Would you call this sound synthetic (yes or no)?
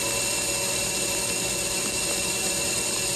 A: no